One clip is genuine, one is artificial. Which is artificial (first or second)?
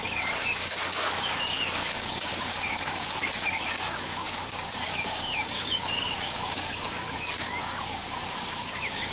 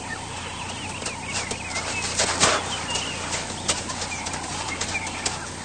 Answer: first